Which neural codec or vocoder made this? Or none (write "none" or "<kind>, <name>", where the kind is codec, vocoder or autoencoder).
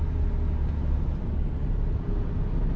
none